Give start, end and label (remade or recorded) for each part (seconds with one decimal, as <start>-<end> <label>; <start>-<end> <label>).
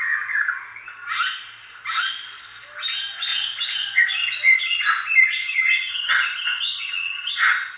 0.0-5.4 recorded; 5.4-7.8 remade